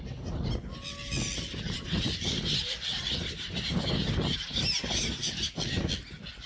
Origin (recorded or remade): recorded